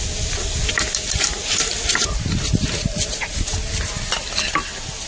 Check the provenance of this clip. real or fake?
real